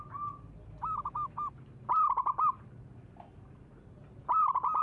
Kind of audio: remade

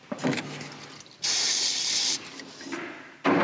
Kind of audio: recorded